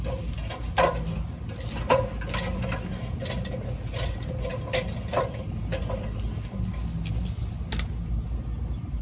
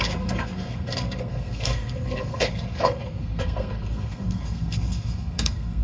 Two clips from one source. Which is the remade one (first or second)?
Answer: second